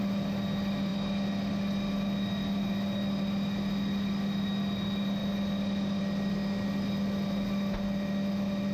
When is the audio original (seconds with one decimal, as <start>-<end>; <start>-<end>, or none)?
0.0-8.7